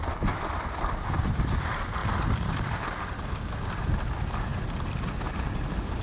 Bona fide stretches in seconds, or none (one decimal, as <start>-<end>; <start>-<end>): 0.0-6.0